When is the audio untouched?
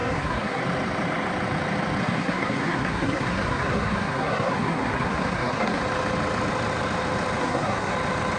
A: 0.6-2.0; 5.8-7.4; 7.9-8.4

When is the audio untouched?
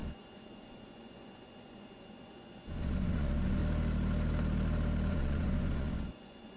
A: 3.6-5.1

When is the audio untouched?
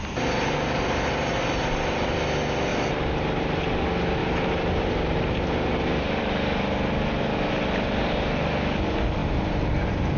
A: 0.0-2.7; 3.6-4.2; 6.2-7.3; 8.7-9.2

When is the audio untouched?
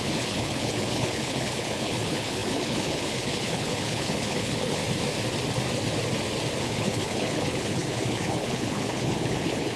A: 4.8-6.6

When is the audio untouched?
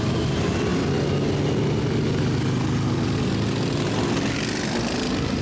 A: 0.0-5.4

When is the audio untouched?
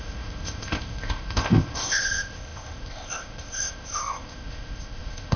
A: none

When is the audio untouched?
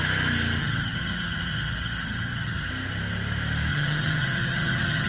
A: 0.0-0.6; 2.7-3.7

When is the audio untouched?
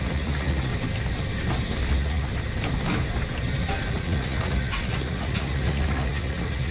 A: 0.7-1.9; 2.3-3.9